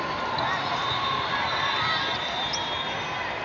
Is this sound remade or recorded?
recorded